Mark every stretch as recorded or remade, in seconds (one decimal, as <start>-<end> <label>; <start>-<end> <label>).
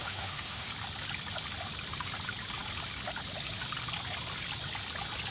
0.0-0.7 remade; 0.7-5.3 recorded